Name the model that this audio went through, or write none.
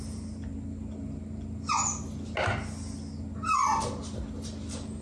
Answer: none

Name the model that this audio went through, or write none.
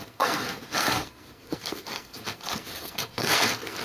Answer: codec, SNAC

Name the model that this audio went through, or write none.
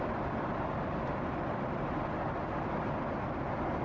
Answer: none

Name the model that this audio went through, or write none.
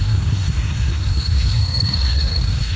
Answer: codec, SNAC